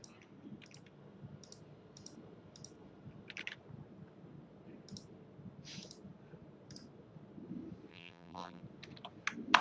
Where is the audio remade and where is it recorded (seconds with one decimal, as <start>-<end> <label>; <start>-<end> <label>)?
0.0-7.9 recorded; 7.9-8.6 remade; 8.6-9.6 recorded